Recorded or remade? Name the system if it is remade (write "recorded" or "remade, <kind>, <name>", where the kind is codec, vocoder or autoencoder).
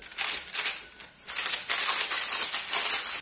recorded